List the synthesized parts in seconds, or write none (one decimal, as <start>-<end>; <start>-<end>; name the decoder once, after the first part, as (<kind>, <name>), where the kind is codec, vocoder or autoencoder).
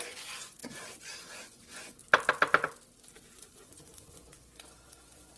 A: 0.0-2.0 (vocoder, Vocos); 3.1-5.4